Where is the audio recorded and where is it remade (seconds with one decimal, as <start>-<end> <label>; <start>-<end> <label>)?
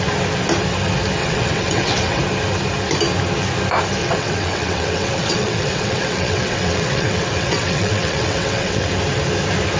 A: 0.0-1.2 recorded; 1.2-2.2 remade; 2.2-4.0 recorded; 4.0-8.9 remade; 8.9-9.8 recorded